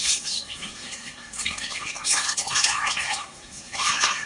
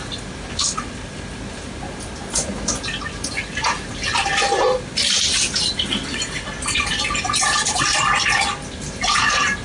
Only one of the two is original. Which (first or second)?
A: second